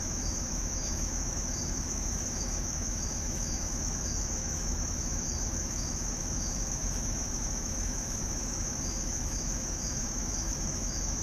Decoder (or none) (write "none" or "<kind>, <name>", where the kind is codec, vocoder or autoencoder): autoencoder, DAC-VAE